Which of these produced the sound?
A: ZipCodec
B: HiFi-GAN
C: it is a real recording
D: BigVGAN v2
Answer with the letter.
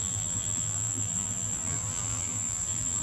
D